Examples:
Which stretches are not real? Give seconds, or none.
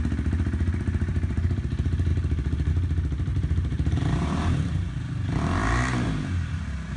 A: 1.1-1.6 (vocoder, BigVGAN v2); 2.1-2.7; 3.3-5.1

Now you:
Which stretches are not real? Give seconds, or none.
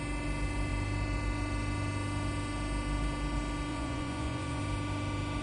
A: 3.7-4.6 (vocoder, Vocos)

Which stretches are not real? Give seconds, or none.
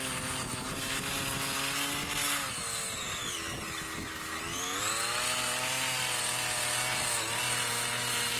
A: none